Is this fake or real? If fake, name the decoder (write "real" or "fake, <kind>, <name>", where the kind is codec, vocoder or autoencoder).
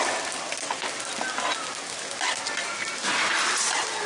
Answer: real